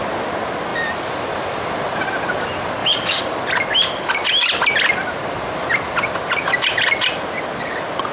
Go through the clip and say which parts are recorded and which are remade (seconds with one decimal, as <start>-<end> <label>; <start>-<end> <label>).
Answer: 0.0-0.7 recorded; 0.7-2.3 remade; 2.3-8.1 recorded